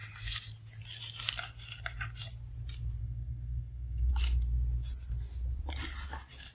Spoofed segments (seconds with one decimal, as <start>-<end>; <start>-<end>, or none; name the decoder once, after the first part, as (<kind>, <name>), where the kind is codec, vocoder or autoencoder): 3.0-4.1 (codec, SNAC)